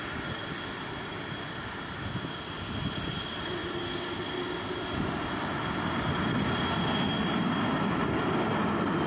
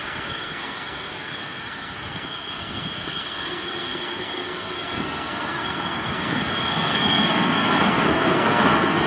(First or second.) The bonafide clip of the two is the first